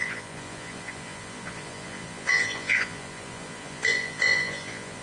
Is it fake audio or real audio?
fake